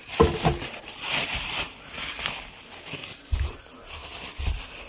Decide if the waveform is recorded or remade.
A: recorded